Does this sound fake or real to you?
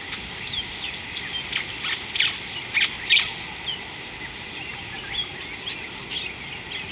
real